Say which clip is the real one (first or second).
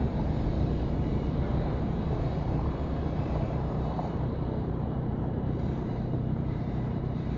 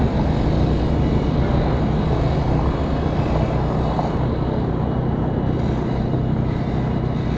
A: second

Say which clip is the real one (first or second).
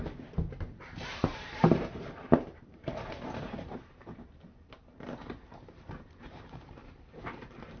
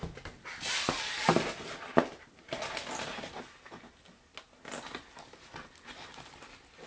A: second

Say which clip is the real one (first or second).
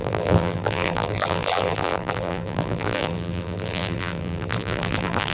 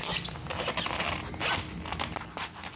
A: second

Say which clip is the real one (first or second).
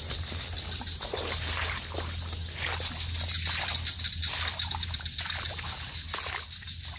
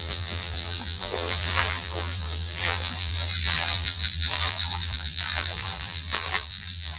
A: first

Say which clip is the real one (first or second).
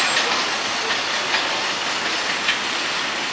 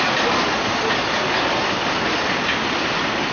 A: first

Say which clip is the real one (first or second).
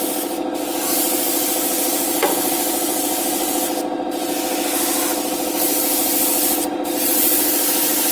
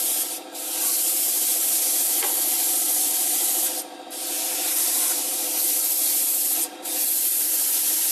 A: first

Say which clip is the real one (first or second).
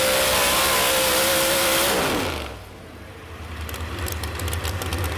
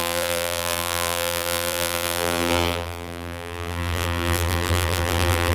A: first